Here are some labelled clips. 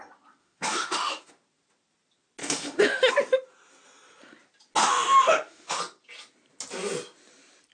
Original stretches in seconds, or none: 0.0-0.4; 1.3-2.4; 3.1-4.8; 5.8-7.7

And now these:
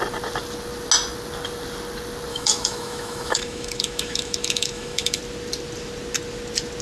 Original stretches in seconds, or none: 0.0-2.3; 5.2-6.8

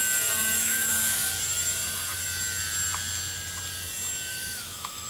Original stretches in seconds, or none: 0.0-0.6; 1.3-4.3

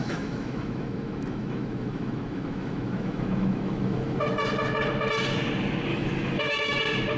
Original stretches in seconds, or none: 4.2-5.9; 6.8-7.2